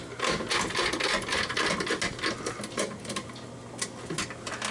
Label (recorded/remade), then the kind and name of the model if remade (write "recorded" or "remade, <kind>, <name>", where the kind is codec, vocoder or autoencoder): recorded